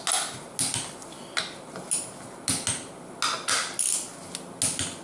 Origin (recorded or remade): recorded